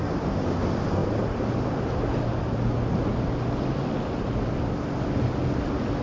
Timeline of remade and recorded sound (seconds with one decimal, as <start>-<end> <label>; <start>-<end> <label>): 0.0-6.0 recorded